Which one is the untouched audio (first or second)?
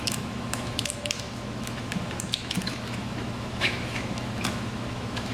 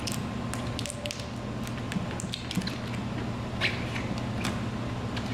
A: second